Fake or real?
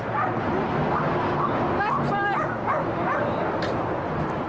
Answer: real